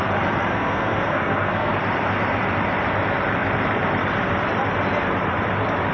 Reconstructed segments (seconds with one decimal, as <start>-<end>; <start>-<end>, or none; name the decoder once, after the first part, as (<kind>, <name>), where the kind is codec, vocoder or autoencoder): 0.5-1.7 (codec, SNAC)